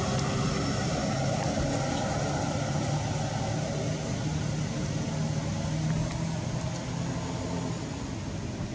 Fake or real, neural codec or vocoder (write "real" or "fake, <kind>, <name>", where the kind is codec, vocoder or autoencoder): real